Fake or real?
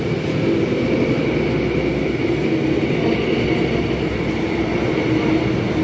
real